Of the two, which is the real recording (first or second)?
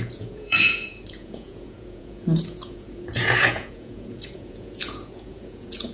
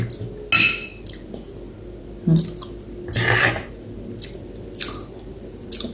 second